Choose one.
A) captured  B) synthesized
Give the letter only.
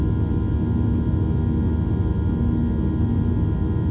A